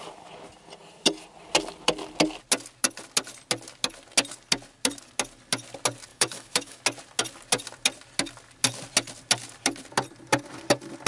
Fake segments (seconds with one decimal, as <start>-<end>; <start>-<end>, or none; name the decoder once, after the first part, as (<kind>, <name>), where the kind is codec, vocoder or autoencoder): 6.1-6.8 (autoencoder, DAC-VAE)

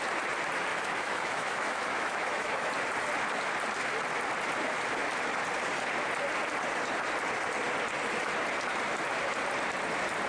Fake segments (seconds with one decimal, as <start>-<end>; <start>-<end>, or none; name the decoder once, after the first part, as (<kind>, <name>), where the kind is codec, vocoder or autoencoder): 0.7-2.7 (autoencoder, DAC-VAE)

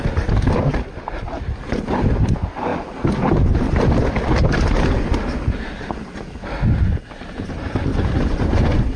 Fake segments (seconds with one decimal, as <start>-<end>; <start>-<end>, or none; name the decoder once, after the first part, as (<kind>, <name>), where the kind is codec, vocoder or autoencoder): 7.9-9.0 (vocoder, Vocos)

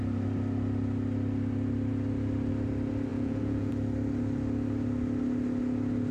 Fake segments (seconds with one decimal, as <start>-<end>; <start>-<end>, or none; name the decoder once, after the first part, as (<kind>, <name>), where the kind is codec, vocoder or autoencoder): 3.1-3.7 (vocoder, Vocos)

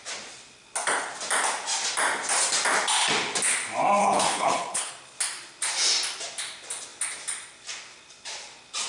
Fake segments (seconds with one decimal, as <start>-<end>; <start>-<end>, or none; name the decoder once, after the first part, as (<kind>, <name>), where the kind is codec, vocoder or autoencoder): 4.0-4.9 (codec, HILCodec)

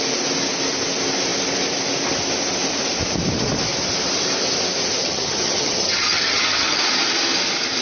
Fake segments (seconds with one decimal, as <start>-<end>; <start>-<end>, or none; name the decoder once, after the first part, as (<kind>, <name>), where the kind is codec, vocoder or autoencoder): 5.0-6.8 (vocoder, HiFi-GAN)

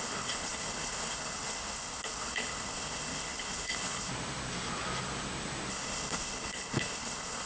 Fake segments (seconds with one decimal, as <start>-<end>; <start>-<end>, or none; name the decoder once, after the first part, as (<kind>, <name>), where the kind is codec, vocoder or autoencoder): 0.0-4.1 (codec, HILCodec); 5.7-7.5